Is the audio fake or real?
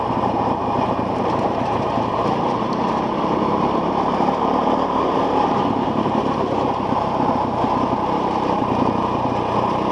fake